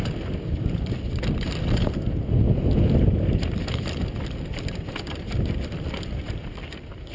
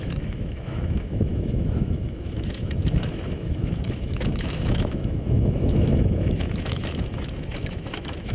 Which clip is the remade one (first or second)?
second